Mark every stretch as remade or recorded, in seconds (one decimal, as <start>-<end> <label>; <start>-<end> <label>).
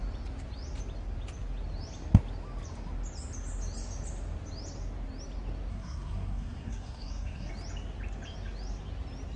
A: 0.0-5.7 recorded; 5.7-7.5 remade; 7.5-9.4 recorded